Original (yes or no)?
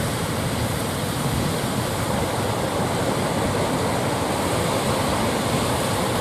yes